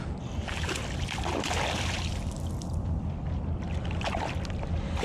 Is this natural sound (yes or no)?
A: yes